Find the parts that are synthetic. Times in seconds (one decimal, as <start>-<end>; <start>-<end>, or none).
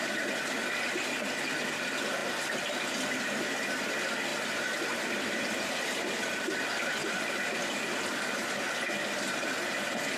4.3-6.0; 7.0-7.6